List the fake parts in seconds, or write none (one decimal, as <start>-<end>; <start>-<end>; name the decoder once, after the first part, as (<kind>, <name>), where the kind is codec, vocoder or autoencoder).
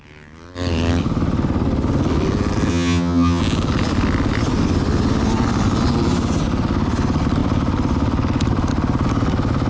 2.7-3.4 (vocoder, HiFi-GAN)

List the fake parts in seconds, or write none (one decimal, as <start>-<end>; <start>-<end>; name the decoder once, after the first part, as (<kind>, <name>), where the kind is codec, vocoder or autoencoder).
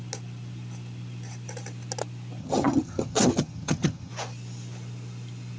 2.4-4.1 (vocoder, HiFi-GAN)